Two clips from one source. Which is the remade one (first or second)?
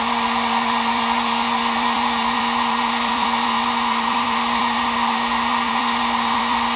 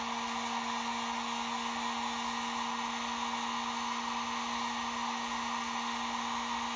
first